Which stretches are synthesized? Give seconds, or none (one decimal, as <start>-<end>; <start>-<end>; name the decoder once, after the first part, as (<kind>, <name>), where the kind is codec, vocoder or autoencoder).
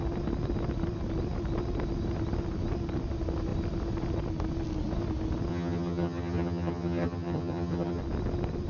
5.5-8.0 (vocoder, HiFi-GAN)